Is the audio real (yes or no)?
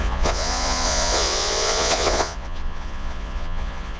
no